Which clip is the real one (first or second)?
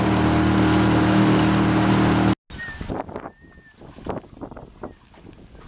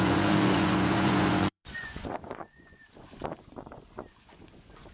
first